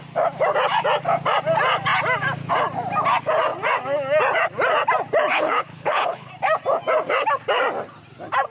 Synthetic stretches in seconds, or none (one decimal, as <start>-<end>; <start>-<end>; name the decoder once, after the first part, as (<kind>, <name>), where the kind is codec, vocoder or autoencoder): 5.3-6.3 (codec, HILCodec)